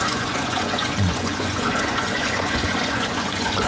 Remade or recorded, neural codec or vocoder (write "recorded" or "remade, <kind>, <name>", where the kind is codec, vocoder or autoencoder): remade, vocoder, Vocos